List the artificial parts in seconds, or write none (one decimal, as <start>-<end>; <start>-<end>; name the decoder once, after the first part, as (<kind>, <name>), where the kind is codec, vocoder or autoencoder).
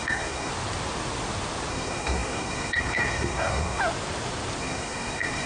0.0-0.5 (codec, SNAC); 1.7-3.8; 4.6-5.5